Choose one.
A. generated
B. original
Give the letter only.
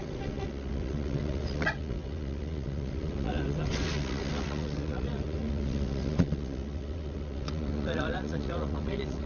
A